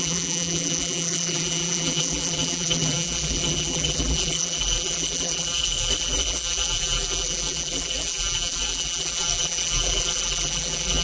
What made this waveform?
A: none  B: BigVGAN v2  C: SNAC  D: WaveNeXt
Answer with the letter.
B